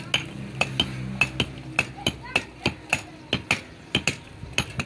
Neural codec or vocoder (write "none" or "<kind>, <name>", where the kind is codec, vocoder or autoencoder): none